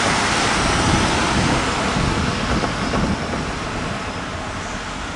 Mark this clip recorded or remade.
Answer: recorded